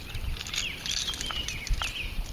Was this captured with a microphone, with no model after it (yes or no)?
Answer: yes